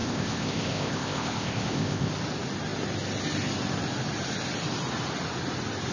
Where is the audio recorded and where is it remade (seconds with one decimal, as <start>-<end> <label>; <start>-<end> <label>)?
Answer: 0.0-2.1 remade; 2.1-5.9 recorded